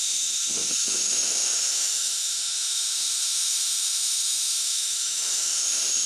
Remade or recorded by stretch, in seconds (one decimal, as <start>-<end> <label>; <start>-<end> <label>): 0.0-6.1 remade